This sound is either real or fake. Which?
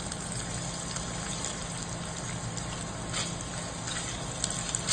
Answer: real